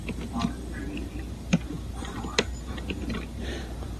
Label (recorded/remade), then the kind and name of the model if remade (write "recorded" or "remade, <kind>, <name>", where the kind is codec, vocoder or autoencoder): remade, vocoder, BigVGAN v2